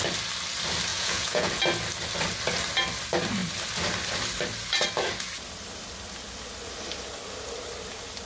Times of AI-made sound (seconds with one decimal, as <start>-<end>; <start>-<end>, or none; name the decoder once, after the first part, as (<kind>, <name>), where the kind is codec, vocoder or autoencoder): 0.9-1.5 (vocoder, Vocos)